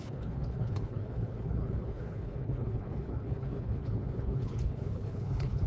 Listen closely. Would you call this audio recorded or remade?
remade